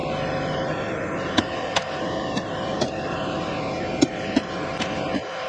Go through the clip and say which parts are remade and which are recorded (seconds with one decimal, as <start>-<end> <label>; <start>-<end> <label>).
0.0-5.5 remade